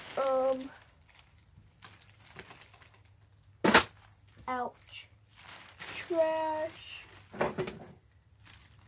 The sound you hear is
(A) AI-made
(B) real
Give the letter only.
B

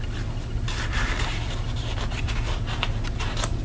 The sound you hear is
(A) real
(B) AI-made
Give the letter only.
A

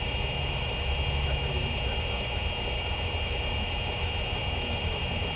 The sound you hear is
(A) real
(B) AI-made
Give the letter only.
B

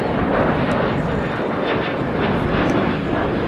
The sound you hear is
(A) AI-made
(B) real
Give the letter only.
B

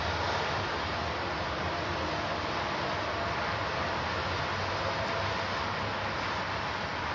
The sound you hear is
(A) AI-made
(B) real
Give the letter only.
B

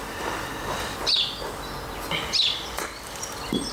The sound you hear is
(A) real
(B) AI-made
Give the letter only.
A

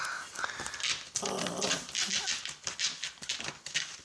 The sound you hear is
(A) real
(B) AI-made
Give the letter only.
A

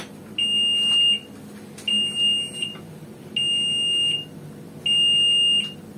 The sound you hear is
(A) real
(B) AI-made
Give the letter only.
A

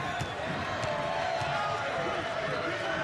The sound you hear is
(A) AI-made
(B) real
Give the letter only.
B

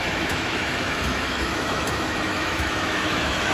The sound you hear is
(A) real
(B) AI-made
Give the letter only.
B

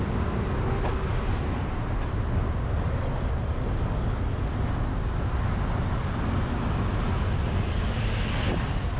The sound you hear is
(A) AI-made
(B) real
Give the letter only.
B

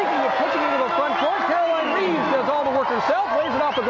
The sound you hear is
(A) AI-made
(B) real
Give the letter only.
B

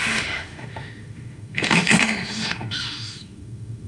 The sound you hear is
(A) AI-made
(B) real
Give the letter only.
A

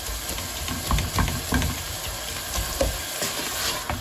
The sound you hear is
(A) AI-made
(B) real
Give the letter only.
B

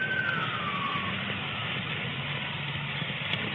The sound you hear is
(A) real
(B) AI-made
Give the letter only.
A